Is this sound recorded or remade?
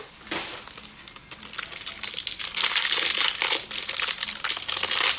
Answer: recorded